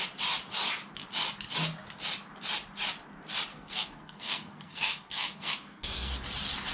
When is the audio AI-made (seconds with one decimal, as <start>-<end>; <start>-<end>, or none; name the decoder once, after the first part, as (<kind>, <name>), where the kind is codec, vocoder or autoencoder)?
3.5-6.1 (codec, SNAC)